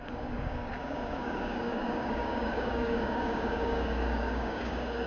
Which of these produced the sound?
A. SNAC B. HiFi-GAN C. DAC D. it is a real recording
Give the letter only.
C